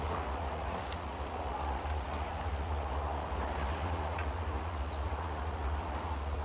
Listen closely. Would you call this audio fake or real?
fake